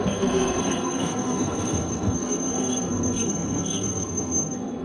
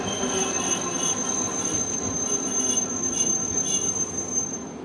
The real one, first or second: second